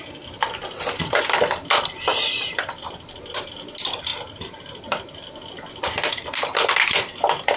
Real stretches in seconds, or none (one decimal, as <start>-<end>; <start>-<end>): 0.0-7.6